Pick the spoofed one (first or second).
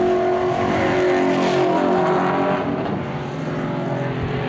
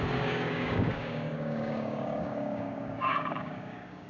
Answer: second